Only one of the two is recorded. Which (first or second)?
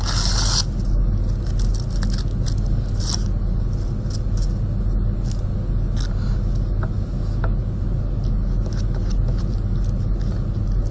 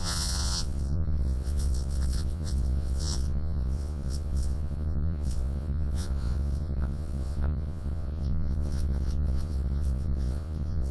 first